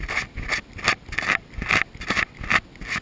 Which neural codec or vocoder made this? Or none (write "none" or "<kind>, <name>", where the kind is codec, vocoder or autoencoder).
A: none